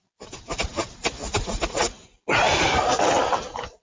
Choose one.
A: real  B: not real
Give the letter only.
A